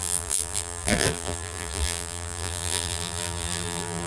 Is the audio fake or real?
fake